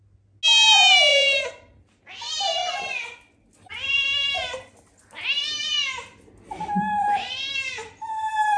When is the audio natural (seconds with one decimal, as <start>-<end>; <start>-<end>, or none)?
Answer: 0.0-8.6